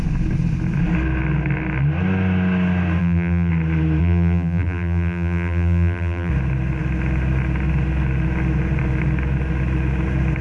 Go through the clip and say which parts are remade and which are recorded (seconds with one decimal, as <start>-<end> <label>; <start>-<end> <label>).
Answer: 0.0-3.0 recorded; 3.0-3.5 remade; 3.5-4.0 recorded; 4.0-6.3 remade; 6.3-10.4 recorded